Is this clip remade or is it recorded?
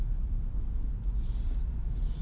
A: recorded